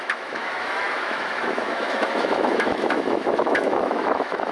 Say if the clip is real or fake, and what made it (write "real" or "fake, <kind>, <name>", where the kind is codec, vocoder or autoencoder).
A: fake, autoencoder, DAC-VAE